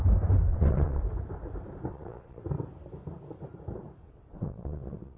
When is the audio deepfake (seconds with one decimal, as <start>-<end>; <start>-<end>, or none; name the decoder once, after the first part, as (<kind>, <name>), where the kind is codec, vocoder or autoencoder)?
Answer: 0.5-1.0 (vocoder, WaveNeXt); 1.9-2.4; 4.0-5.2